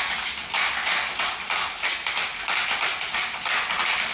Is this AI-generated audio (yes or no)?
no